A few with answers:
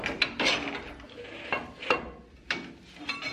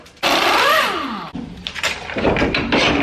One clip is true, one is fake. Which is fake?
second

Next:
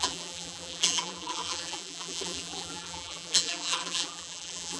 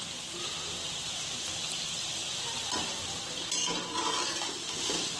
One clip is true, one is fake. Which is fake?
first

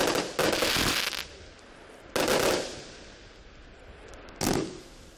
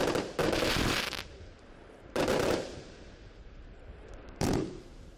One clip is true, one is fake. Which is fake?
second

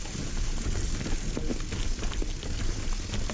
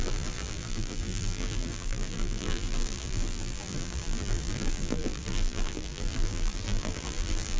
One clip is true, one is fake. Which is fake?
second